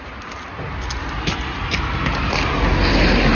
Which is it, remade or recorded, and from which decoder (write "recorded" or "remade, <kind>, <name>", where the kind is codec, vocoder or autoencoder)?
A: recorded